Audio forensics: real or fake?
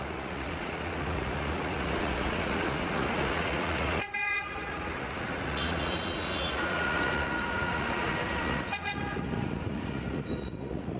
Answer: fake